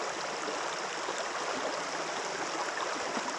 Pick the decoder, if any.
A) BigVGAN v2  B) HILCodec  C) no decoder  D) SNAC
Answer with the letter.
C